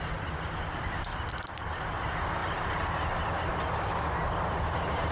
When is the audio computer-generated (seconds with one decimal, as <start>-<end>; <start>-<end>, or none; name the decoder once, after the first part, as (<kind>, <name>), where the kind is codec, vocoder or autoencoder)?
4.2-5.1 (vocoder, BigVGAN v2)

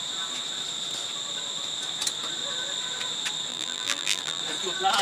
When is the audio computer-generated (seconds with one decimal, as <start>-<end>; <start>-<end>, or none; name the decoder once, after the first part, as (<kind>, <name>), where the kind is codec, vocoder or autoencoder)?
3.5-4.4 (vocoder, BigVGAN v2)